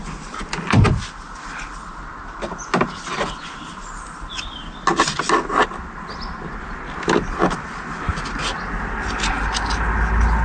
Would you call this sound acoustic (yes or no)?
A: yes